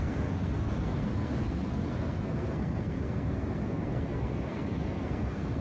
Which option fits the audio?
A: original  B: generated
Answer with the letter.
B